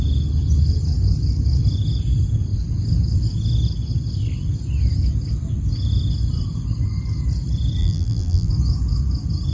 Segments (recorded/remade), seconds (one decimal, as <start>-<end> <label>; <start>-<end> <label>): 0.0-7.8 recorded; 7.8-8.5 remade; 8.5-9.5 recorded